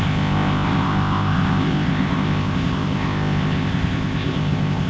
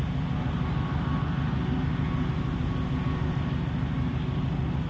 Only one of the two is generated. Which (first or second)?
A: first